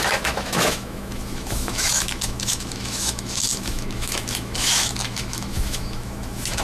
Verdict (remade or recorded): remade